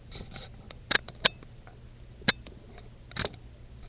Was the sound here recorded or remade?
recorded